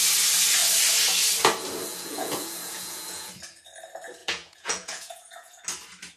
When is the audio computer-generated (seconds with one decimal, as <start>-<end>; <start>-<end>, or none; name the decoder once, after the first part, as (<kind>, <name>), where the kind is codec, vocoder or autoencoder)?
1.9-3.3 (vocoder, Vocos); 4.2-5.6

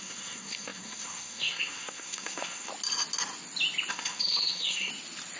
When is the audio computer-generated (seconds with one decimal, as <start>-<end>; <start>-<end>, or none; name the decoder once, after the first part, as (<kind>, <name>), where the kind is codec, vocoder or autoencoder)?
0.0-2.7 (codec, SNAC); 3.9-4.9

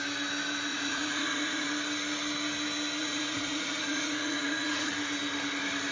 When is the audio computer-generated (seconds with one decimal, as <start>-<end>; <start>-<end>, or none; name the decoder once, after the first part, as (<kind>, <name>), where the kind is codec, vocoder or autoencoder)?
0.7-1.7 (vocoder, Vocos); 3.0-4.9

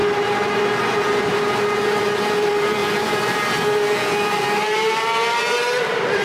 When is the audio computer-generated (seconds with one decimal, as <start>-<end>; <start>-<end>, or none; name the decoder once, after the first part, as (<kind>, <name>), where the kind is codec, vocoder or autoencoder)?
2.0-6.2 (vocoder, BigVGAN v2)

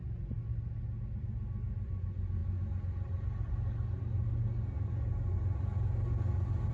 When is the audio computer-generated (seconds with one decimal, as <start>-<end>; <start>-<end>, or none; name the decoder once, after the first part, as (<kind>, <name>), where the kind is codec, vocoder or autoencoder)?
none

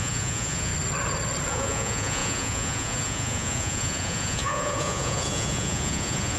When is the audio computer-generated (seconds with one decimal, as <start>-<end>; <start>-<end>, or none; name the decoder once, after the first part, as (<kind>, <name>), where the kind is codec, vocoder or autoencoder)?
0.0-0.7 (vocoder, Vocos); 1.5-6.4

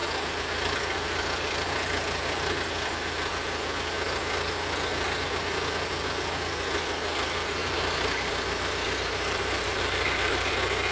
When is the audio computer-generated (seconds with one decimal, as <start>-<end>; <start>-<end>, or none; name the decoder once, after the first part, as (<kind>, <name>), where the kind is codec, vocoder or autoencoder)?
7.6-10.5 (vocoder, BigVGAN v2)

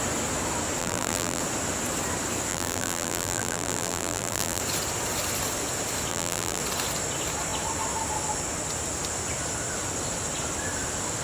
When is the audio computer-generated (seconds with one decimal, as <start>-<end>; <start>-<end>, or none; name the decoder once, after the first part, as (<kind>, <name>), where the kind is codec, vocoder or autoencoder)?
0.8-1.4 (vocoder, BigVGAN v2); 2.5-4.6; 6.1-6.6